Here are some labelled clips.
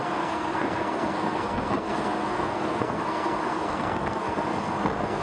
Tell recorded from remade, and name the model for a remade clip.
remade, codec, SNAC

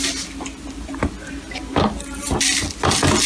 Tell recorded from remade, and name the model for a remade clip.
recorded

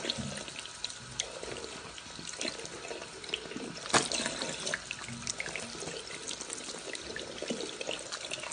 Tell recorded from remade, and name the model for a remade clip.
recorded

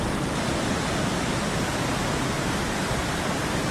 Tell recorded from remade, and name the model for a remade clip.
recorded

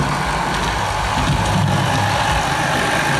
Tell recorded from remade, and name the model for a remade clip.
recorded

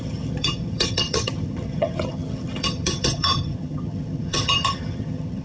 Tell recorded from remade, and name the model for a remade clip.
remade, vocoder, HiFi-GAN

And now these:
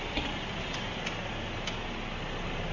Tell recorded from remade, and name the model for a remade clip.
recorded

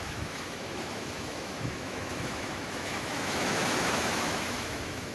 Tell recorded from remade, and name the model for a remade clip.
remade, autoencoder, DAC-VAE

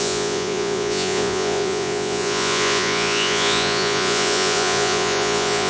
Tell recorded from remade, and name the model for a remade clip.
remade, vocoder, Vocos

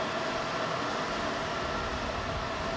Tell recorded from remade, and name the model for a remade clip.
recorded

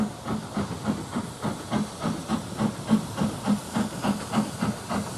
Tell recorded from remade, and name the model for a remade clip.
recorded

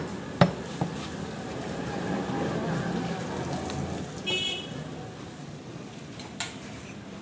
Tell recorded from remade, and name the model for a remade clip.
recorded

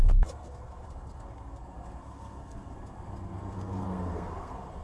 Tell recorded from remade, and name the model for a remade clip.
remade, codec, SNAC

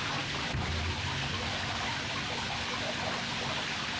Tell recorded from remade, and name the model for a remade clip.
recorded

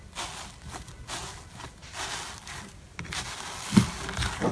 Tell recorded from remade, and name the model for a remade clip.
recorded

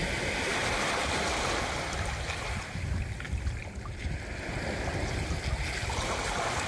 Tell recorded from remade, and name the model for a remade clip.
recorded